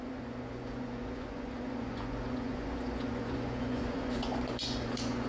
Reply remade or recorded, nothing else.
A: remade